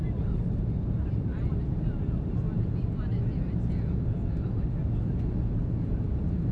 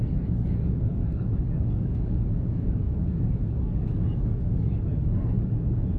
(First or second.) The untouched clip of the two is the first